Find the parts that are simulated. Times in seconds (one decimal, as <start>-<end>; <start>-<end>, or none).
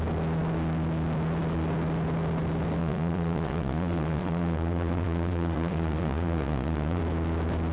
2.8-7.0